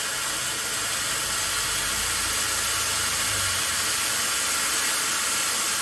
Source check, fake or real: real